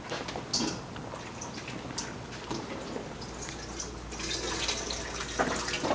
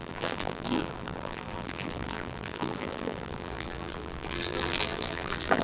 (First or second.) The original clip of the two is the first